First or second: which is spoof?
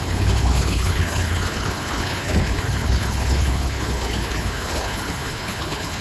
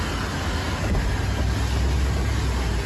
first